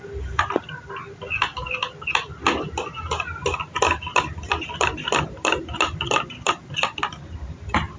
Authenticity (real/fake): real